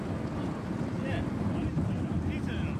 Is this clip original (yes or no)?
yes